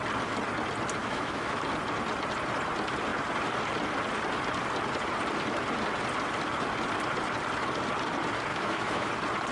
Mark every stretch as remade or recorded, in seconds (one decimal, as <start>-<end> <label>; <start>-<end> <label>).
0.0-1.0 recorded; 1.0-1.6 remade; 1.6-8.5 recorded; 8.5-9.1 remade; 9.1-9.5 recorded